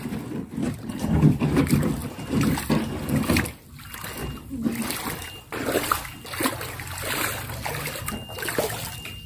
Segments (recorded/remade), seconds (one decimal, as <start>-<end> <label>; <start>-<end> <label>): 0.0-0.6 recorded; 0.6-1.6 remade; 1.6-9.3 recorded